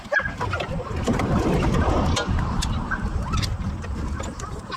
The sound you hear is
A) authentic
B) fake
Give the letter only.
B